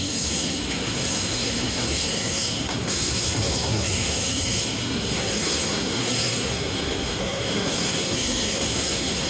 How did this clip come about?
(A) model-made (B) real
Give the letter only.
A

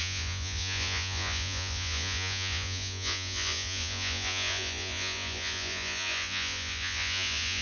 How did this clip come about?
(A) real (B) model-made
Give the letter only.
B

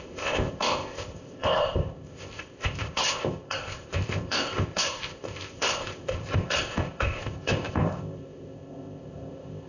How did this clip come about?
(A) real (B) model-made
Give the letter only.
B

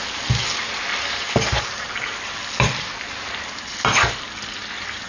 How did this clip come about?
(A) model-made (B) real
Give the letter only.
B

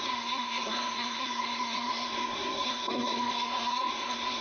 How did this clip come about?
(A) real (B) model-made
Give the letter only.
B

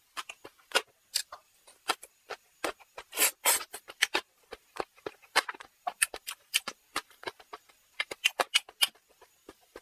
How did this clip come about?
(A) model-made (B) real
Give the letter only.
B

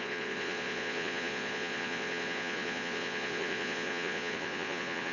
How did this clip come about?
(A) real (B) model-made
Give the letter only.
B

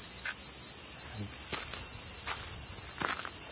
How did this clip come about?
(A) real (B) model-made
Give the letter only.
A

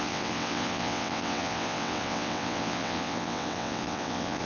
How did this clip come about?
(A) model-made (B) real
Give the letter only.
A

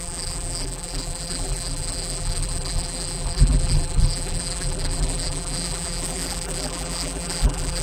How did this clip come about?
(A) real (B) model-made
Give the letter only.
B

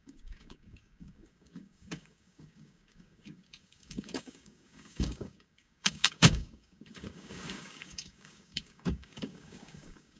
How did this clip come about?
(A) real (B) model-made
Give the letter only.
B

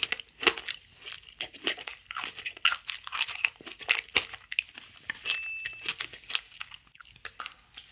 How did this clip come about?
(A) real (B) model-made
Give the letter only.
A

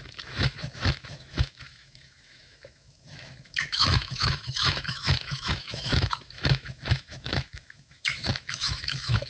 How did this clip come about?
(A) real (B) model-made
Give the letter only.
B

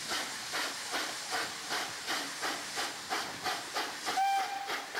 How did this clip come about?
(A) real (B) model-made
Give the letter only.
A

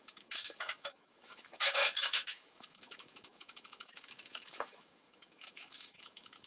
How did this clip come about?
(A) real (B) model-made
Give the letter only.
B